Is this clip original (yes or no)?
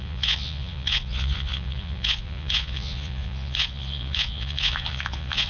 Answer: no